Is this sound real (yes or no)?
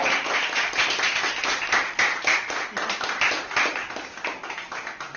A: yes